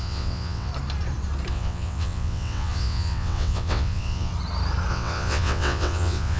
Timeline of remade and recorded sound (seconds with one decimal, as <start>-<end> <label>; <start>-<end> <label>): 0.0-0.7 remade; 0.7-1.5 recorded; 1.5-4.3 remade; 4.3-4.9 recorded; 4.9-6.4 remade

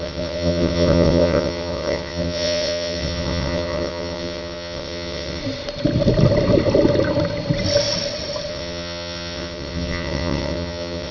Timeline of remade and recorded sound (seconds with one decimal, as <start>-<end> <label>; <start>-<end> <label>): 0.0-5.4 remade; 5.4-8.5 recorded; 8.5-11.1 remade

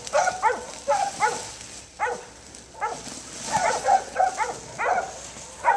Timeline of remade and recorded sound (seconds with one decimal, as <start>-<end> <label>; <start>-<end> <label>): 0.0-3.6 recorded; 3.6-4.2 remade; 4.2-5.8 recorded

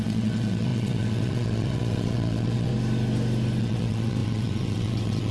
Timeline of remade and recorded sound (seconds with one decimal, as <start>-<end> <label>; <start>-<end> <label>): 0.0-2.7 remade; 2.7-3.6 recorded; 3.6-5.3 remade

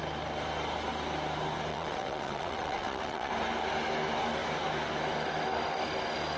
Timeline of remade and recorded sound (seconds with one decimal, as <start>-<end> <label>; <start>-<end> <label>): 0.0-1.7 recorded; 1.7-3.3 remade; 3.3-6.4 recorded

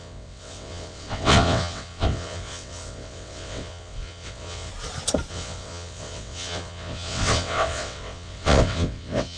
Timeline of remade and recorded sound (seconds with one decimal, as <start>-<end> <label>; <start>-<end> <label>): 0.0-4.7 remade; 4.7-5.3 recorded; 5.3-9.4 remade